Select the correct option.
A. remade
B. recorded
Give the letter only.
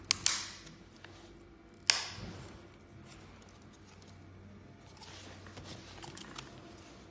B